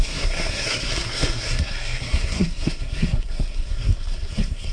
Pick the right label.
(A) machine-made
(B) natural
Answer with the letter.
A